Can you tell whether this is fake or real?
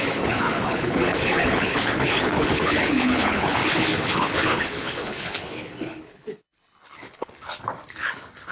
fake